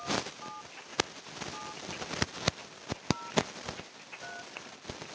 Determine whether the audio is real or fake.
real